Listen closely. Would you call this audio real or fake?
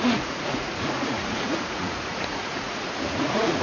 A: fake